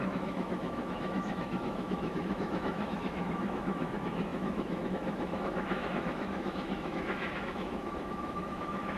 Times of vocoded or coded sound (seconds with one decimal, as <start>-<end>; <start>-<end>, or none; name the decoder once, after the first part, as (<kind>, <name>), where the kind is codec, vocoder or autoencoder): 0.0-9.0 (autoencoder, DAC-VAE)